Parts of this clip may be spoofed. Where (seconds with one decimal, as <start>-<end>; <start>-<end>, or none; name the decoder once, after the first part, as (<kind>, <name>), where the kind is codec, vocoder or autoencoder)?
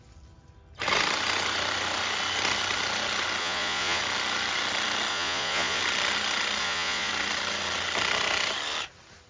3.4-4.0 (vocoder, Vocos); 5.1-5.8; 6.6-7.1